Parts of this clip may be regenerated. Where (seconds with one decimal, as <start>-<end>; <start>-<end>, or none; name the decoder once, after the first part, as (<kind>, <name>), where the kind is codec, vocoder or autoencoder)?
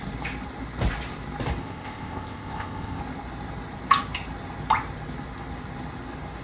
1.6-3.0 (codec, ZipCodec)